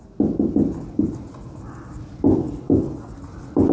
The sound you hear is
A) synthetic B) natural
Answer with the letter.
B